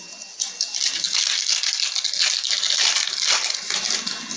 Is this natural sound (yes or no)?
yes